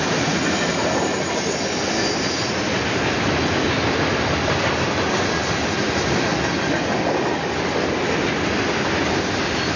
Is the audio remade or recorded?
recorded